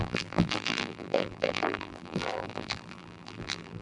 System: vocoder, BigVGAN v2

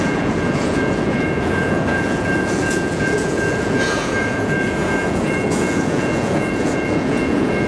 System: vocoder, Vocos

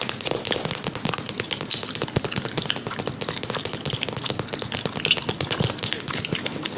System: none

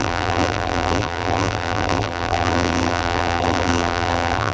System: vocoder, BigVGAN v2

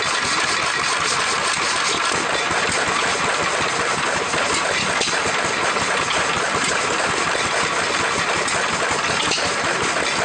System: none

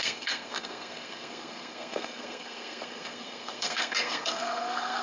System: codec, SNAC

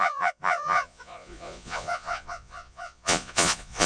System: vocoder, Vocos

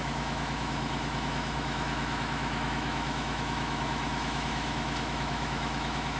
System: autoencoder, DAC-VAE